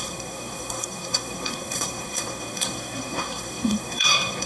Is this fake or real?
fake